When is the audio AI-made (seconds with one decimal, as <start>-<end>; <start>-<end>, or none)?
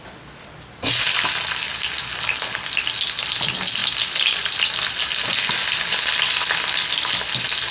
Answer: none